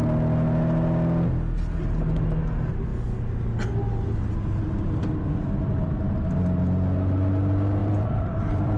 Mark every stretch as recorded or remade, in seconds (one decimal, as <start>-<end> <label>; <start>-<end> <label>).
0.0-7.8 recorded; 7.8-8.8 remade